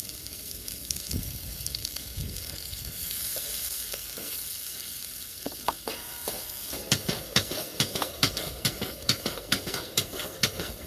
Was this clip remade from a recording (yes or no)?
yes